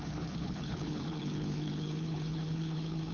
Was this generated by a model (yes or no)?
yes